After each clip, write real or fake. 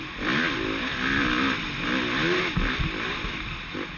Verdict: real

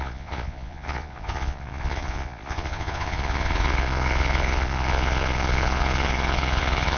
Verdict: fake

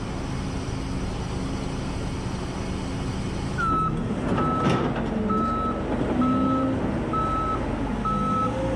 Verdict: real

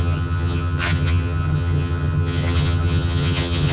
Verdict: fake